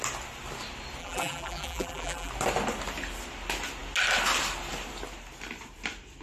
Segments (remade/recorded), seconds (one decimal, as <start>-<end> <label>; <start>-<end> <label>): 0.0-1.0 recorded; 1.0-2.3 remade; 2.3-6.2 recorded